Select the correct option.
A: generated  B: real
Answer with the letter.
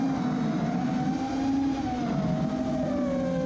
B